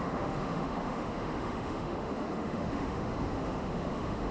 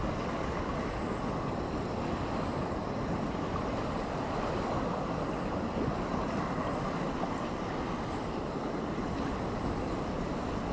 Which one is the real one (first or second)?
second